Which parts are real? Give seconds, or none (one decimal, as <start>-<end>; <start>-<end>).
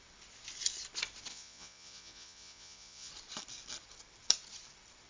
0.0-1.3; 3.1-5.1